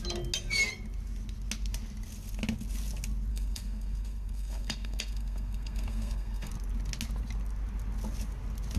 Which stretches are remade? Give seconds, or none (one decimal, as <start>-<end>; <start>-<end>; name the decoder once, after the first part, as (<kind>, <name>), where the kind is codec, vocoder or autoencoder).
3.3-6.5 (codec, SNAC)